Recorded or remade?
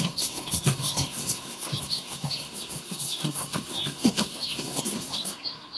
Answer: remade